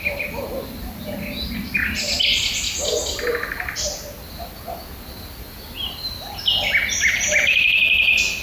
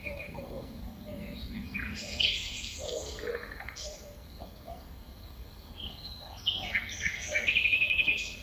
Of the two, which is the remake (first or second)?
second